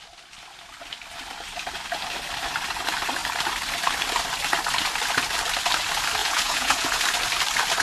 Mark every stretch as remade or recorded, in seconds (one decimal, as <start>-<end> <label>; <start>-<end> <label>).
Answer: 0.0-6.2 recorded; 6.2-7.0 remade; 7.0-7.8 recorded